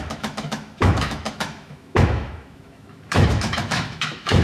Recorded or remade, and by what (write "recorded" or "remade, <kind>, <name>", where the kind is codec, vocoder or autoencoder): remade, autoencoder, DAC-VAE